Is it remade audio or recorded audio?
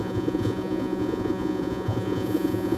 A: remade